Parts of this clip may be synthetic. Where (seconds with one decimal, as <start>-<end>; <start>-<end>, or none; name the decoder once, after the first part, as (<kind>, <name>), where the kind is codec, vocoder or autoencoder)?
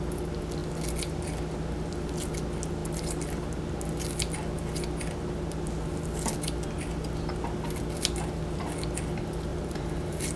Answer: 9.5-10.4 (vocoder, BigVGAN v2)